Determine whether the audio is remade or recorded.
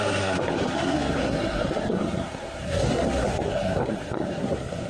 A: remade